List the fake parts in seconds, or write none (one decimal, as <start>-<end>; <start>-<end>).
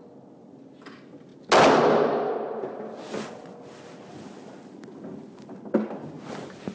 none